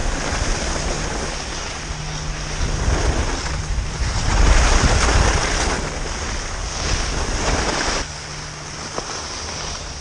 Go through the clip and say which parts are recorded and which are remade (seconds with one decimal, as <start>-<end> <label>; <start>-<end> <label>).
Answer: 0.0-3.9 recorded; 3.9-5.4 remade; 5.4-9.5 recorded; 9.5-10.0 remade